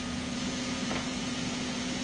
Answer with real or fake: fake